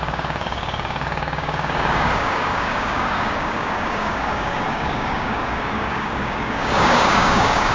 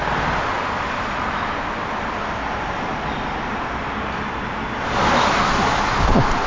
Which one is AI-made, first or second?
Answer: first